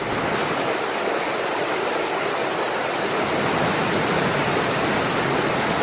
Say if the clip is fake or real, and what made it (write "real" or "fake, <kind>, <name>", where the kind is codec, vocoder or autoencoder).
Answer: real